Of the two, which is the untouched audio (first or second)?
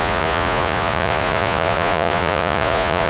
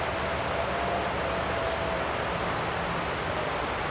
second